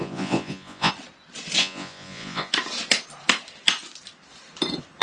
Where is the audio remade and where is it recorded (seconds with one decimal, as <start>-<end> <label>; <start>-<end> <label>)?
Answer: 0.0-0.9 remade; 0.9-1.6 recorded; 1.6-2.5 remade; 2.5-5.0 recorded